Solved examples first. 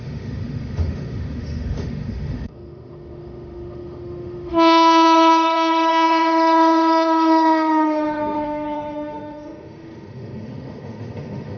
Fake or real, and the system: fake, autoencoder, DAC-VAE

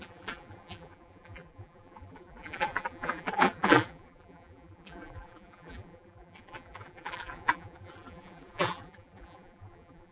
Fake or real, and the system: fake, vocoder, BigVGAN v2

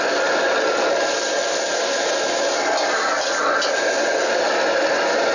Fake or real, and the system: real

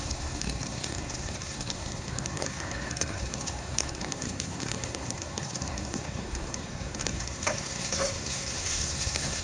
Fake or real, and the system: fake, codec, SNAC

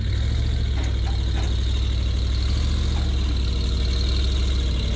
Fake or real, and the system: real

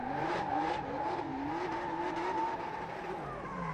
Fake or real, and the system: real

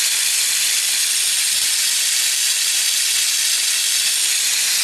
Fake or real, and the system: real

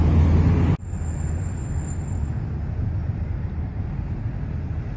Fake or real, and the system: real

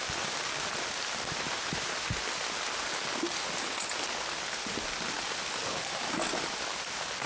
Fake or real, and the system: real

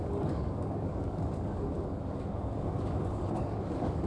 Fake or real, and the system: fake, codec, DAC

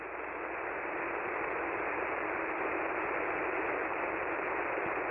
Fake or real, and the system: real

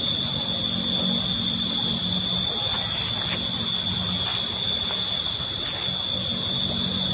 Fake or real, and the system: real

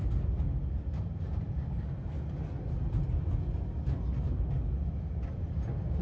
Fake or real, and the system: real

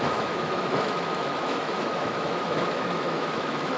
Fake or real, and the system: fake, autoencoder, DAC-VAE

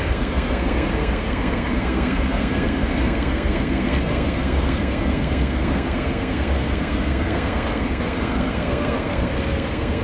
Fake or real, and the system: fake, codec, SNAC